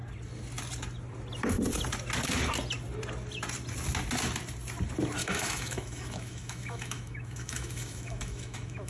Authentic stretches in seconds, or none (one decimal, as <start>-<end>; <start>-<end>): 0.0-5.2